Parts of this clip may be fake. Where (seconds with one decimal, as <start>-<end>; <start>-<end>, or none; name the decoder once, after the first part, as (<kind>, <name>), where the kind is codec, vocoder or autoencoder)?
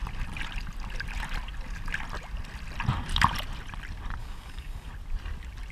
4.2-4.9 (codec, DAC)